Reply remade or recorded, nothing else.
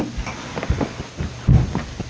recorded